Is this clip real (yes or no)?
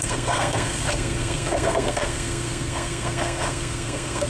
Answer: no